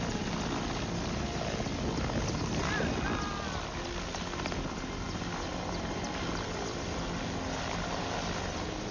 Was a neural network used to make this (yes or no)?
no